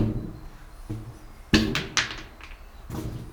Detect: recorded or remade recorded